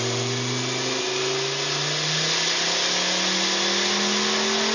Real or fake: real